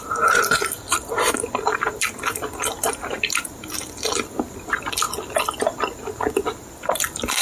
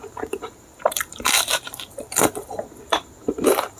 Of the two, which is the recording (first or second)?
first